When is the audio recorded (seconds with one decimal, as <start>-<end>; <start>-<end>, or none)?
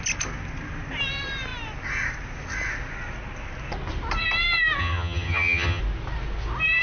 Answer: 0.0-4.8; 5.8-6.8